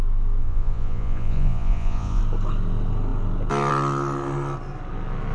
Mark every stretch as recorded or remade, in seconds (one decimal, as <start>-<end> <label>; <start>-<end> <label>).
0.0-0.4 recorded; 0.4-2.2 remade; 2.2-5.3 recorded